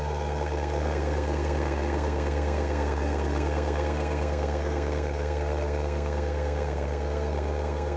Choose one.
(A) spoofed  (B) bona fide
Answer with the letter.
A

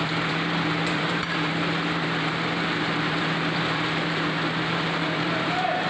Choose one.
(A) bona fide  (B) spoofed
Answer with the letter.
B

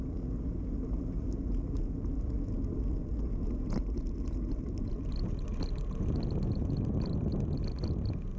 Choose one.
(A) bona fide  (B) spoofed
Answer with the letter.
A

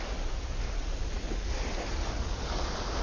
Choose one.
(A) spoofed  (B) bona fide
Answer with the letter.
B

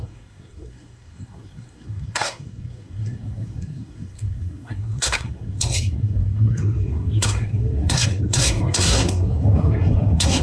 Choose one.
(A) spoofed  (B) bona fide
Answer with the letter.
A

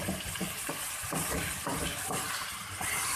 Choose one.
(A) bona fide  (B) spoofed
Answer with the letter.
A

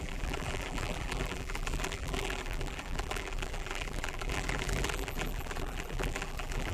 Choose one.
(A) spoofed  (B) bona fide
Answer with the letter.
A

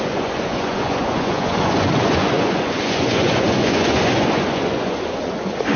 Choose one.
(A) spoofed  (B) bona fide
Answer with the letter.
A